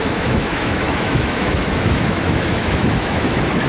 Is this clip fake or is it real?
fake